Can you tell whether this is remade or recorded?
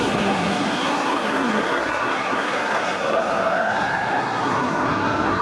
remade